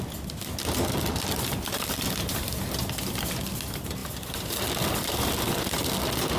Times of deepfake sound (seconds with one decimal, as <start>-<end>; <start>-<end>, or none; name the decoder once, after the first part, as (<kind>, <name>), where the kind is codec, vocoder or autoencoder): 4.0-5.4 (vocoder, BigVGAN v2)